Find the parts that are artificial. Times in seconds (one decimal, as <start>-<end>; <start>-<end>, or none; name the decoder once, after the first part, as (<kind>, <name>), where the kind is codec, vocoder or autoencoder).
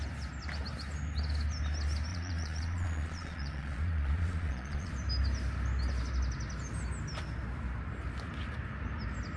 2.1-4.9 (vocoder, Vocos)